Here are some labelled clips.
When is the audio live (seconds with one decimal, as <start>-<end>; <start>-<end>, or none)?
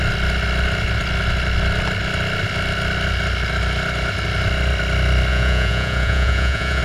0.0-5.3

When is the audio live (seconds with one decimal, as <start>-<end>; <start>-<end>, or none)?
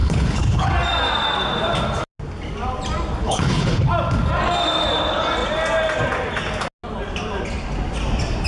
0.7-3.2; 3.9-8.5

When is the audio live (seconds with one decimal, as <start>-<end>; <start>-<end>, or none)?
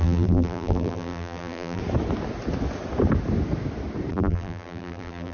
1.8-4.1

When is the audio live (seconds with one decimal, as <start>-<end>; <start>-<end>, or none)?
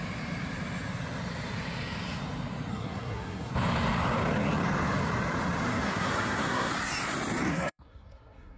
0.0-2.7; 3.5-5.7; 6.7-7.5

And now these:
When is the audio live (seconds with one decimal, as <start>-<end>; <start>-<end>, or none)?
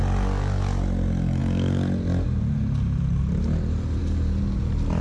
0.0-5.0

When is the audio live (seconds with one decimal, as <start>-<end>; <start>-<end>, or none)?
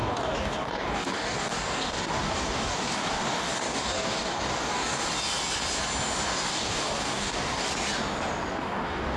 5.0-6.5; 7.7-8.5